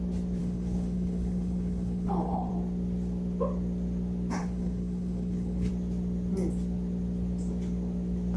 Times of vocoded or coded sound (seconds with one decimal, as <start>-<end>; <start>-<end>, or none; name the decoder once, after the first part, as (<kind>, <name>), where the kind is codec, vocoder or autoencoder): 0.4-2.5 (codec, HILCodec); 4.4-5.7